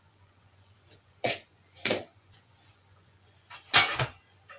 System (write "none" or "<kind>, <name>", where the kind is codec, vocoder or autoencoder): vocoder, Vocos